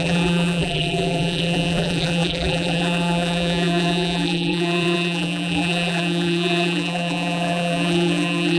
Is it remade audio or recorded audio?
remade